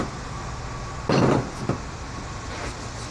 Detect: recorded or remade recorded